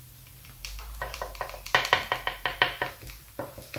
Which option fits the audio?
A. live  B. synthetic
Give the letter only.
B